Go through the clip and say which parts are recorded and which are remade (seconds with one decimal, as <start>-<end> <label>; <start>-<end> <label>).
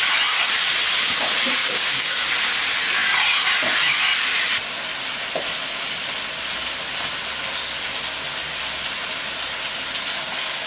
0.0-1.6 recorded; 1.6-2.3 remade; 2.3-10.7 recorded